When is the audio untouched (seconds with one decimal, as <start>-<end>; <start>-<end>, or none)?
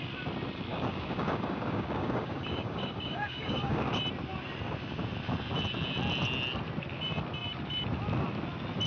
0.0-0.7; 4.0-8.9